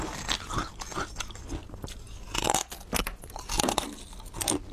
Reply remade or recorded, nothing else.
recorded